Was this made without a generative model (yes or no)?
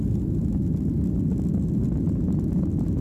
yes